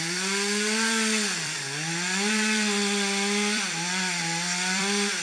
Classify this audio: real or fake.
fake